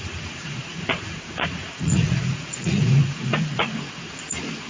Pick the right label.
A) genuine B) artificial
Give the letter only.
B